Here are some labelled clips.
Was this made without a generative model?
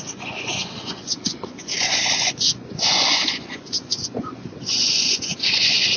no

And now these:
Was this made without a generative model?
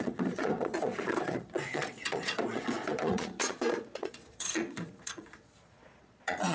no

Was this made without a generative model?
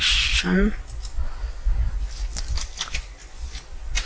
yes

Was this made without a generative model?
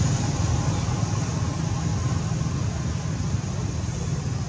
yes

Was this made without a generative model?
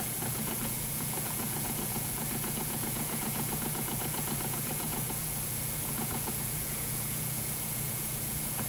no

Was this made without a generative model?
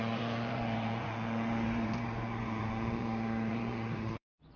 no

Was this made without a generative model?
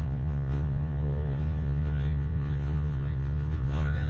no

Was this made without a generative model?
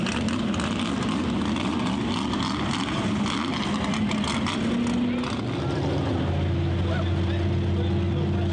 yes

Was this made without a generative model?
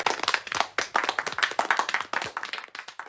yes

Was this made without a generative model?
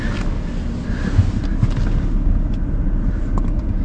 yes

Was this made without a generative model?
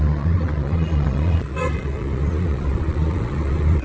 no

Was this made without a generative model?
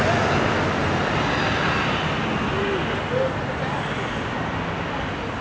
yes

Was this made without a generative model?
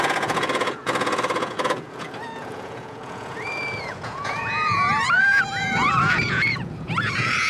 no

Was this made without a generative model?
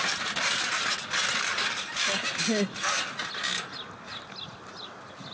yes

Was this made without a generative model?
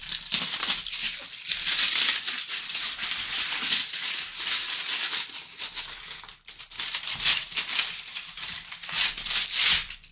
yes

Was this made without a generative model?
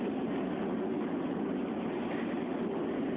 yes